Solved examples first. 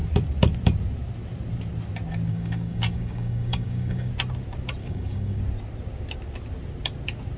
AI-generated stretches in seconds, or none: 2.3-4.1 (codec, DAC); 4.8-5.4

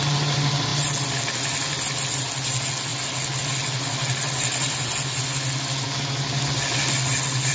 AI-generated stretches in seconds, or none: none

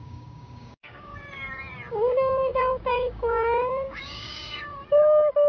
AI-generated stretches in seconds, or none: 0.0-1.1 (codec, DAC); 1.9-4.7